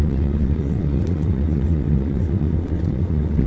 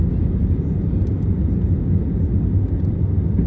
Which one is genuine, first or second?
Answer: second